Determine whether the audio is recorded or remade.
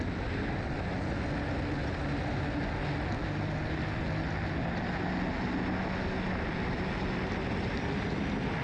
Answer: recorded